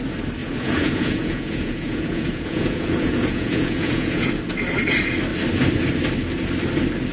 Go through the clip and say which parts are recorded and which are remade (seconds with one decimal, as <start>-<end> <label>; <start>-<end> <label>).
0.0-0.4 recorded; 0.4-4.3 remade; 4.3-7.1 recorded